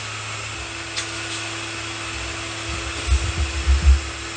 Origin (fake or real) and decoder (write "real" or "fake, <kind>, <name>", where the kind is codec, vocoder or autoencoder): real